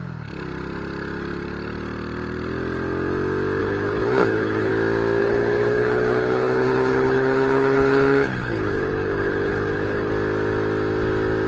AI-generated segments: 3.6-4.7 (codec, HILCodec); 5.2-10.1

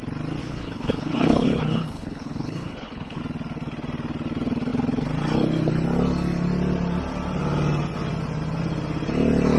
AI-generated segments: 0.4-3.2 (codec, HILCodec)